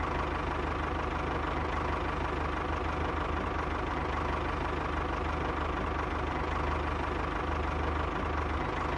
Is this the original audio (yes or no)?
yes